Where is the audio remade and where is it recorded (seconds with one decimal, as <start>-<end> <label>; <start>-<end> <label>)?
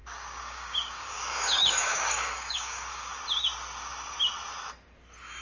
0.0-3.2 remade; 3.2-5.4 recorded